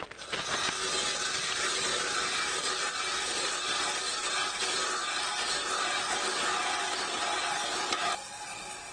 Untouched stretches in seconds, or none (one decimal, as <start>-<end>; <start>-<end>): 0.0-8.9